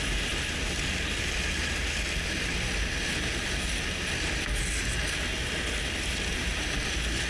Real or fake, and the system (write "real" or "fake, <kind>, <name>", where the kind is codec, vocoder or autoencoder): real